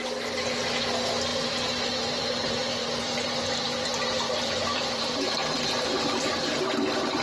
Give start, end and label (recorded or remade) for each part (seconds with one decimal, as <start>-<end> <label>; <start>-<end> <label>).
0.0-1.3 recorded; 1.3-2.2 remade; 2.2-2.8 recorded; 2.8-6.6 remade; 6.6-7.2 recorded